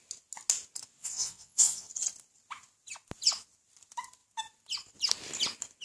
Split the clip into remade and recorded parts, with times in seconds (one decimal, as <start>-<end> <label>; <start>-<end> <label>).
0.0-1.0 recorded; 1.0-1.9 remade; 1.9-5.8 recorded